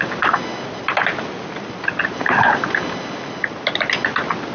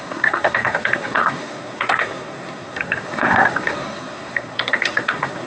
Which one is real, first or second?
first